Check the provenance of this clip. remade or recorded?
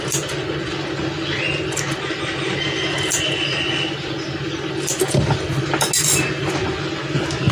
recorded